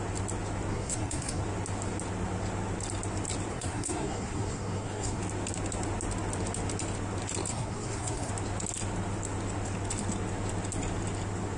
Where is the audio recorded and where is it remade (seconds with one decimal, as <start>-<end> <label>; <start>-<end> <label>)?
0.0-0.7 recorded; 0.7-1.4 remade; 1.4-3.5 recorded; 3.5-5.2 remade; 5.2-7.5 recorded; 7.5-8.3 remade; 8.3-11.6 recorded